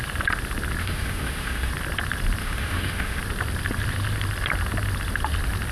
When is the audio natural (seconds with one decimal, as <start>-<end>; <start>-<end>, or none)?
0.0-0.8; 1.7-2.4; 3.2-5.7